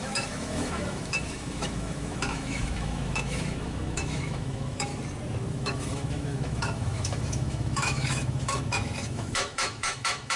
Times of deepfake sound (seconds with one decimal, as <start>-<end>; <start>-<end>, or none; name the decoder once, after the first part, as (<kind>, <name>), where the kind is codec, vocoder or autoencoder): 0.0-4.9 (autoencoder, DAC-VAE); 5.5-10.4